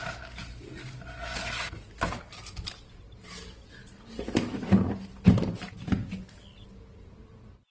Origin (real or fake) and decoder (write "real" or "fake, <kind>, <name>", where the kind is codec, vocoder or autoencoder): real